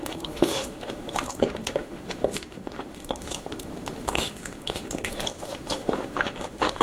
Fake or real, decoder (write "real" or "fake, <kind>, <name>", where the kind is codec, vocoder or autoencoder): fake, autoencoder, DAC-VAE